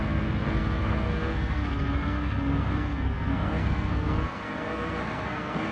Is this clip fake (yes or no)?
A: yes